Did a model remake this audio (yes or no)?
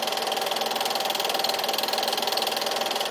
no